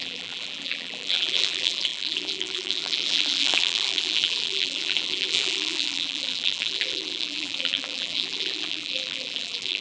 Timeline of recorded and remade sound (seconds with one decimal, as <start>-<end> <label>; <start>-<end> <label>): 0.0-9.8 remade